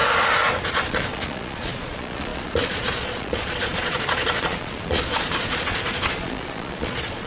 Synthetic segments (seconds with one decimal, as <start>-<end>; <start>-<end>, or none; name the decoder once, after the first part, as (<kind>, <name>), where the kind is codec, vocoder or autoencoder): 0.7-7.3 (vocoder, Vocos)

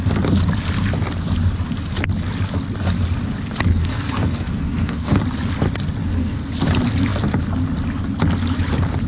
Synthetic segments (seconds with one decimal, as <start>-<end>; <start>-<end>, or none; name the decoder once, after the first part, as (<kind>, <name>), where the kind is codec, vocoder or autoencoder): 3.7-5.2 (codec, SNAC); 6.0-6.5

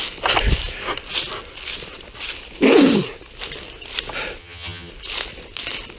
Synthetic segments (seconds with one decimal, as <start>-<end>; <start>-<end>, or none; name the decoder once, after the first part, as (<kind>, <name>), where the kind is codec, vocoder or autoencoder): 4.4-4.9 (vocoder, HiFi-GAN)